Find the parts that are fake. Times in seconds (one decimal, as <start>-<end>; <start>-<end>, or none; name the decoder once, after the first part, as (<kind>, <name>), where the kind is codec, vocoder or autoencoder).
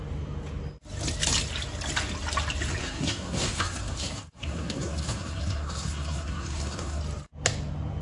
2.8-7.0 (codec, SNAC)